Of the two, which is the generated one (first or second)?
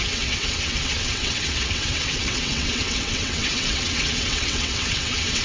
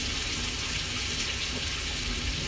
first